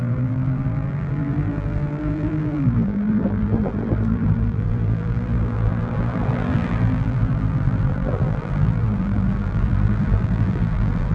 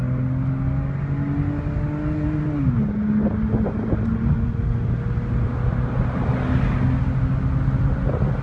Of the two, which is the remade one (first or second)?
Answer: first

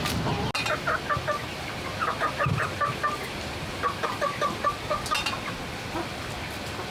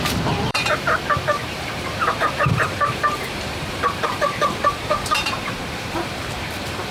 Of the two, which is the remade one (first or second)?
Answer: second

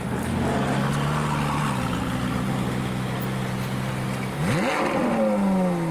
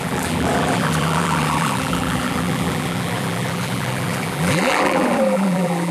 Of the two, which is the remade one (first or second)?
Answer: second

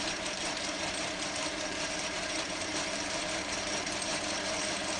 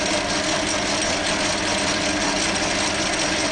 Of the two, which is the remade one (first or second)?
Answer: first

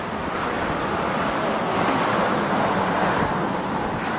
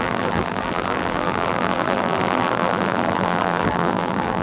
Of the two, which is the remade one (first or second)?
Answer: second